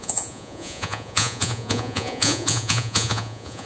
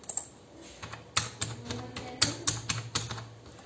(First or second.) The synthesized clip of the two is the first